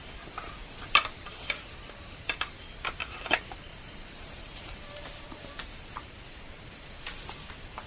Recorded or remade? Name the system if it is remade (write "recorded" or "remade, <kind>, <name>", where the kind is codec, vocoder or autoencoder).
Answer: remade, vocoder, BigVGAN v2